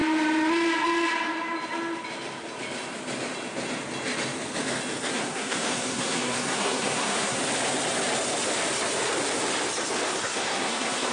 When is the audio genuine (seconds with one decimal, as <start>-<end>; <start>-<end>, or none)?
0.0-5.1; 7.4-10.2

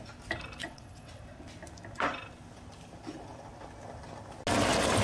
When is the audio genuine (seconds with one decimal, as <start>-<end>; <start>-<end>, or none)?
0.0-0.6; 1.2-5.0